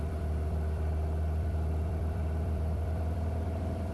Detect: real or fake fake